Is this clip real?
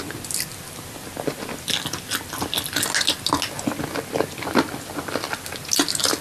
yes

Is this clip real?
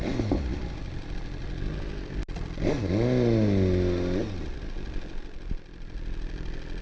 yes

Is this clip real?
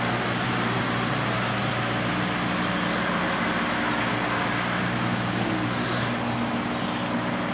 yes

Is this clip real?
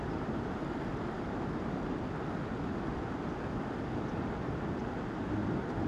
yes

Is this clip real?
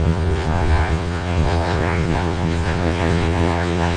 no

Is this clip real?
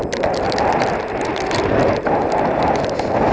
yes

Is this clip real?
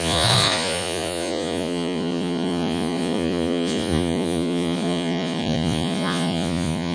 no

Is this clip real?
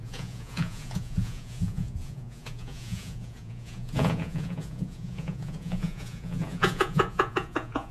no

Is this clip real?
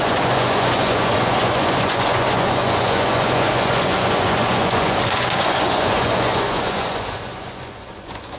no